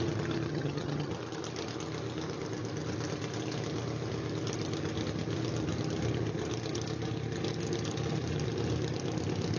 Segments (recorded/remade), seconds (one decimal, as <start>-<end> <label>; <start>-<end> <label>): 0.0-0.5 recorded; 0.5-1.1 remade; 1.1-9.6 recorded